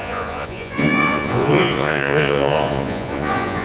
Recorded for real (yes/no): no